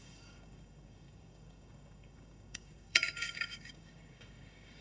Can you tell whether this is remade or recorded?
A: remade